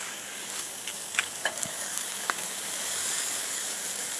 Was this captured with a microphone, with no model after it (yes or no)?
no